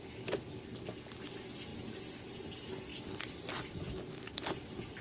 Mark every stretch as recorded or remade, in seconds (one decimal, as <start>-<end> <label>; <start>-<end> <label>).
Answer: 0.0-1.7 recorded; 1.7-2.4 remade; 2.4-2.9 recorded; 2.9-4.4 remade; 4.4-5.0 recorded